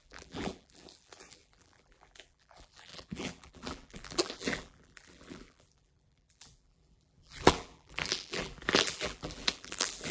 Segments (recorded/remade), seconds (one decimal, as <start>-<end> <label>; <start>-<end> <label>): 0.0-10.1 remade